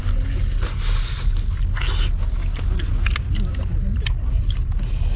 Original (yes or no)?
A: yes